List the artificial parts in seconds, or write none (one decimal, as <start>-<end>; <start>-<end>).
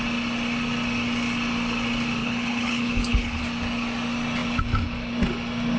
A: 2.2-3.4